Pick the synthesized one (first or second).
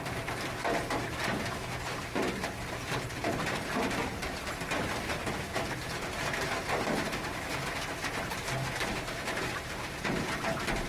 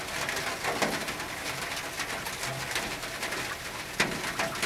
first